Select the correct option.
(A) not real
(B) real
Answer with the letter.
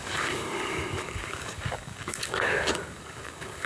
A